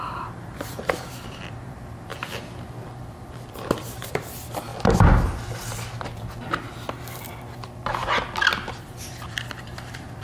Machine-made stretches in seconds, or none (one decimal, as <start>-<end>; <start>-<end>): 0.0-2.1; 3.0-4.7; 8.7-10.2